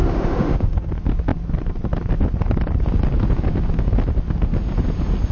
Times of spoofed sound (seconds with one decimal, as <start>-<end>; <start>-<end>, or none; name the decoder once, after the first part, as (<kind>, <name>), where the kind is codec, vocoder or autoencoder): 0.0-0.9 (autoencoder, DAC-VAE)